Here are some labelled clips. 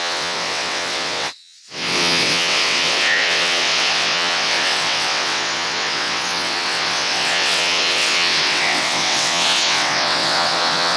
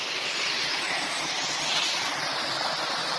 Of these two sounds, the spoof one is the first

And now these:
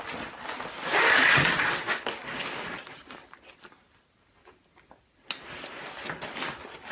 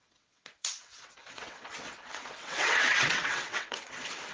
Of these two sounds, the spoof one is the second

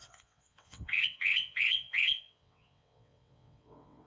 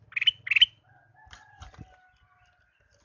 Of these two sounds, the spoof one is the first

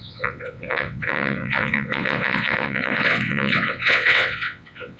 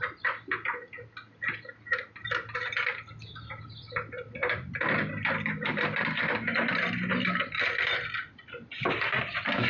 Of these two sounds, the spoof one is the first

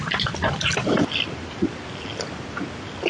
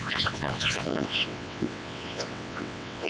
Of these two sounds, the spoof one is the second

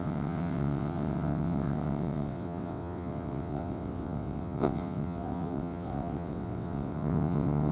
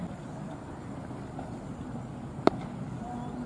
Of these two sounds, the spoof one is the first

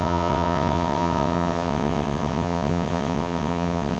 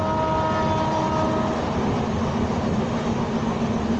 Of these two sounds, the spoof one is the first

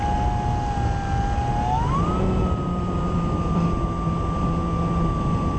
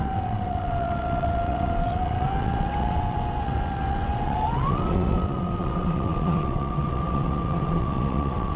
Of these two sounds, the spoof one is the second